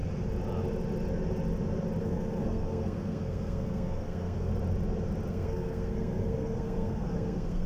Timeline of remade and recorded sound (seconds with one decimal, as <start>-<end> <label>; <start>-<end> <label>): 0.0-2.0 recorded; 2.0-4.5 remade; 4.5-5.3 recorded; 5.3-7.7 remade